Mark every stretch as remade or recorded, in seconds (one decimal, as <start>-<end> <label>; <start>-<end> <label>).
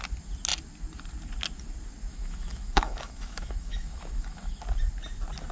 0.0-2.1 recorded; 2.1-4.6 remade; 4.6-5.5 recorded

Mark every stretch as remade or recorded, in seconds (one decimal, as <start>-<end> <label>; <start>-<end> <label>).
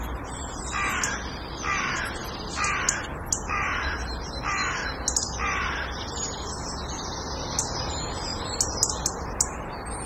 0.0-10.1 recorded